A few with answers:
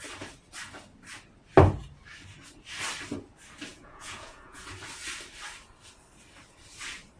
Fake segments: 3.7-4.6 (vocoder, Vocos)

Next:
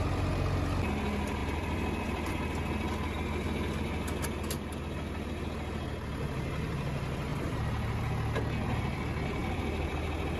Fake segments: 1.4-2.3 (vocoder, BigVGAN v2); 7.3-8.1; 9.4-9.9

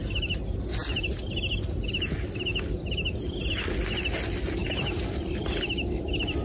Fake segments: 4.6-5.2 (vocoder, BigVGAN v2)